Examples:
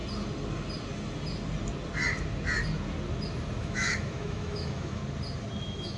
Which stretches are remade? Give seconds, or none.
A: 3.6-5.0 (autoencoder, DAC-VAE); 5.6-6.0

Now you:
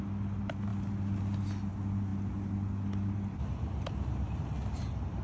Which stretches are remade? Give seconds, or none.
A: none

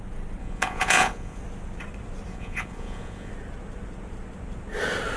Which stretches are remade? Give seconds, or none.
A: 0.4-1.4 (vocoder, Vocos); 2.3-3.3